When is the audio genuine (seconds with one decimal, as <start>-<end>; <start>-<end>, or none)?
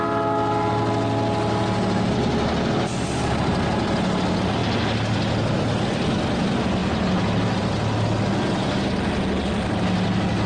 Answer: 0.0-10.5